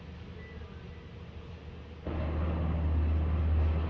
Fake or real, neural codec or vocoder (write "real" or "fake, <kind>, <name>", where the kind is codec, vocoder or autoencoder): real